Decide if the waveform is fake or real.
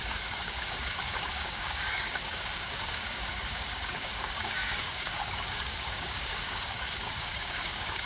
fake